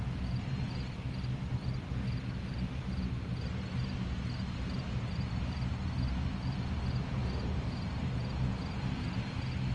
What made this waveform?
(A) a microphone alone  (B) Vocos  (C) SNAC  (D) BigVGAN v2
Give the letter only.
A